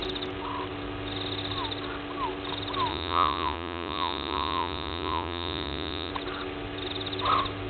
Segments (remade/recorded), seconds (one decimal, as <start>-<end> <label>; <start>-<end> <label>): 0.0-2.9 recorded; 2.9-6.1 remade; 6.1-7.7 recorded